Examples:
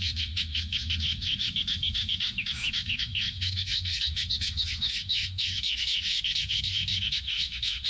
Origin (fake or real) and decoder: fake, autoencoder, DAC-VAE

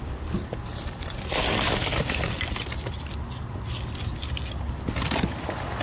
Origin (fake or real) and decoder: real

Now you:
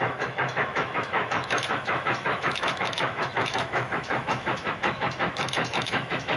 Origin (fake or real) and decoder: fake, autoencoder, DAC-VAE